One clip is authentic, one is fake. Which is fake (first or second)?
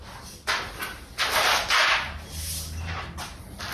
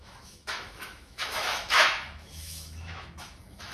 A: second